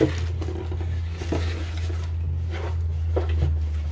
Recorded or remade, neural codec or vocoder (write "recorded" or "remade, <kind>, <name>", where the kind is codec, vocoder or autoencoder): recorded